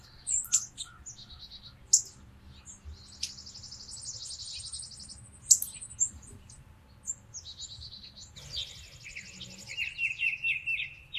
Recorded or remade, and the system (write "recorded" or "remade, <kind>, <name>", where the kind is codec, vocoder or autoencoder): recorded